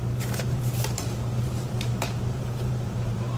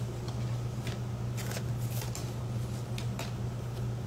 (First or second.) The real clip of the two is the second